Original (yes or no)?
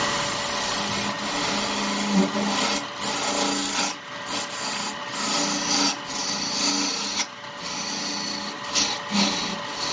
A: yes